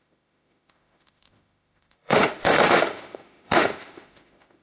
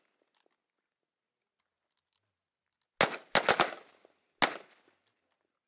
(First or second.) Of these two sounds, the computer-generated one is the first